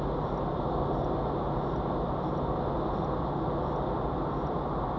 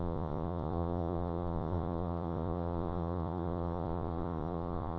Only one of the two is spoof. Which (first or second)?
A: second